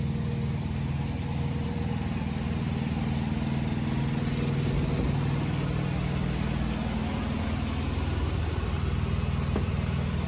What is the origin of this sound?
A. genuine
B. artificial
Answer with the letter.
A